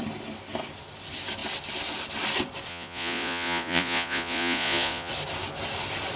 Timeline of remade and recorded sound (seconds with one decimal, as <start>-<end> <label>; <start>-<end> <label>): 0.0-2.7 recorded; 2.7-5.1 remade; 5.1-6.2 recorded

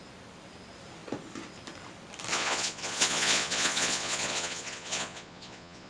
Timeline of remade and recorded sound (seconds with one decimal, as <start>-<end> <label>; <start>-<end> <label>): 0.0-2.3 recorded; 2.3-5.9 remade

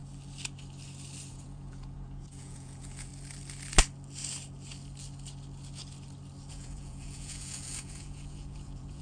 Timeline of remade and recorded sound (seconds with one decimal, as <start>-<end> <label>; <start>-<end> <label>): 0.0-1.3 recorded; 1.3-3.1 remade; 3.1-6.5 recorded; 6.5-9.0 remade